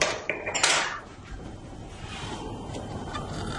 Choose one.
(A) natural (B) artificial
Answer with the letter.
B